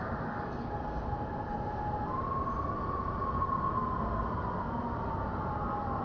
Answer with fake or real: real